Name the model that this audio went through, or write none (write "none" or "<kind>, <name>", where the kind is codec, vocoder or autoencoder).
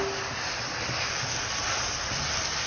none